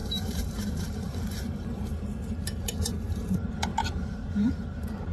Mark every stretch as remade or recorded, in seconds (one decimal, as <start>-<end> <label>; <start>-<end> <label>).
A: 0.0-1.9 remade; 1.9-2.7 recorded; 2.7-5.1 remade